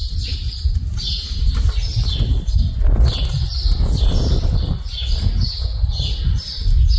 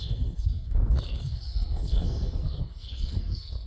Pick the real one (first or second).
first